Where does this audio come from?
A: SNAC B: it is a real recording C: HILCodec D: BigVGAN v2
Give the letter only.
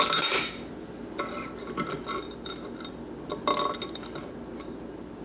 B